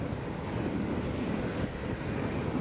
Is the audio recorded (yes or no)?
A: yes